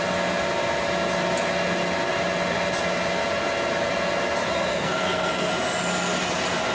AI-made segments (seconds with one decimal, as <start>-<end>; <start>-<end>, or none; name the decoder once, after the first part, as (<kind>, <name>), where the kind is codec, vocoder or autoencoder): 4.7-5.5 (codec, SNAC)